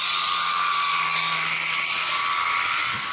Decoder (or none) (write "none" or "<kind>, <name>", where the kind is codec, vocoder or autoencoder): none